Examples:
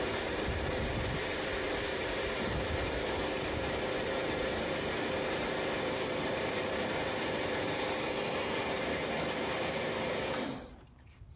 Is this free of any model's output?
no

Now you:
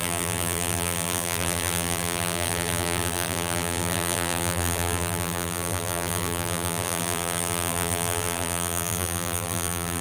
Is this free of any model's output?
no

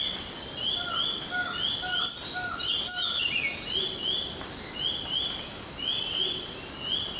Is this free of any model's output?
yes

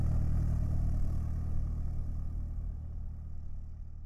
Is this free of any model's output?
yes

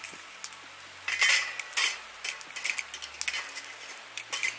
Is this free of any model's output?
yes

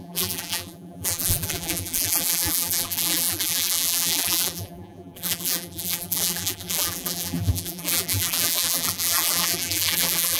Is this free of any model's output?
no